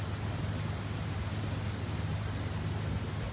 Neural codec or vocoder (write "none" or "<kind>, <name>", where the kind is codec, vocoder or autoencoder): none